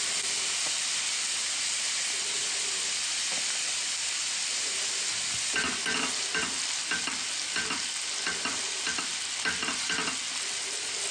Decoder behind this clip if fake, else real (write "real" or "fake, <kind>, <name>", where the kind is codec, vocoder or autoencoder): real